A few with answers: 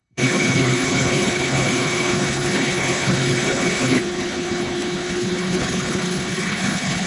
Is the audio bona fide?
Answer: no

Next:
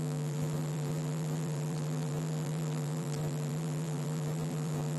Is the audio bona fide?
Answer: no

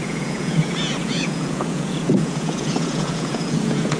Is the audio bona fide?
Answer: no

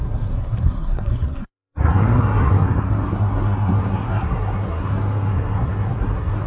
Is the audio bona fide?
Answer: no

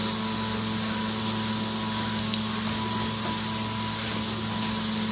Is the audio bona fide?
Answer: yes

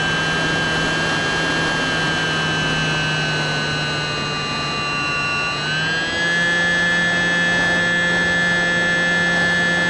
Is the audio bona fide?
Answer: yes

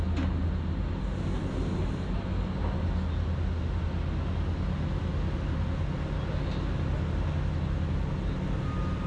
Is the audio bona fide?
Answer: yes